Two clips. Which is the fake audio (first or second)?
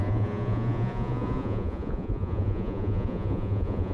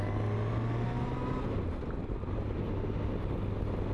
first